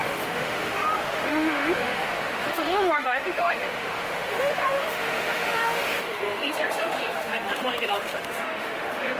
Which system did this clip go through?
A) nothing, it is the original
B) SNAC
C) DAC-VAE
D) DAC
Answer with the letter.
C